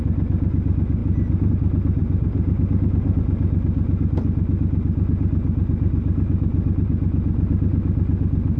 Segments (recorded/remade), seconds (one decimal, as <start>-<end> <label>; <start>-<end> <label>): 0.0-8.6 recorded